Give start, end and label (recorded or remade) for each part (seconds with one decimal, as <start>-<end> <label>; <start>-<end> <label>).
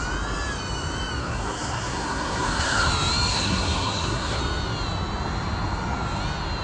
0.0-1.2 recorded; 1.2-2.9 remade; 2.9-3.3 recorded; 3.3-4.4 remade; 4.4-6.6 recorded